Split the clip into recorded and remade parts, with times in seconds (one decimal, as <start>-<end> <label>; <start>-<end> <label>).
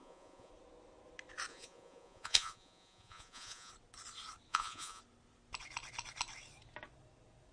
0.0-0.5 remade; 0.5-1.5 recorded; 1.5-3.7 remade; 3.7-4.5 recorded; 4.5-5.0 remade; 5.0-7.5 recorded